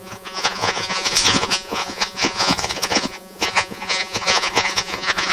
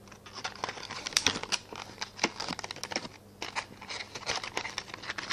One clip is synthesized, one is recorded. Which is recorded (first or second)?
second